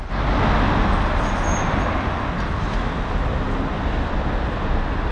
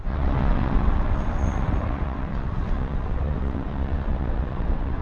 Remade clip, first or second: second